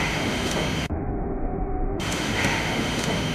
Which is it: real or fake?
fake